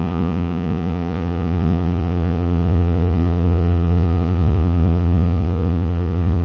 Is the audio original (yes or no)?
no